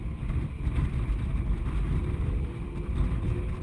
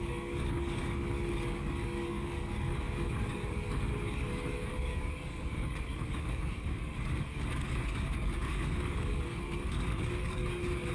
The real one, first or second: first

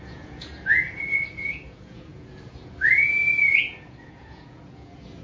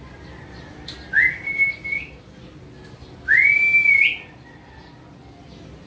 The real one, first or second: second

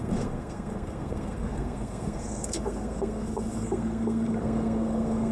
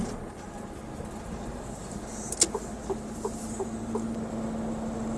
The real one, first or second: second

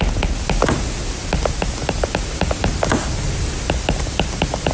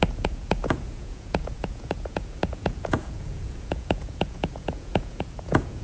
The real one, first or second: first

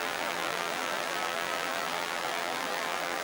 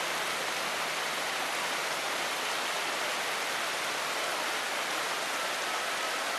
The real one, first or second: second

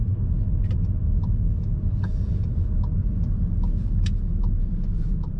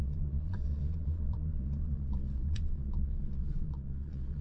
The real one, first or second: first